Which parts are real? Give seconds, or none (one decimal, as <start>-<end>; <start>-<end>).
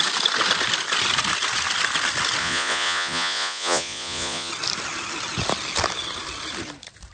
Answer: 0.0-2.4; 4.5-7.1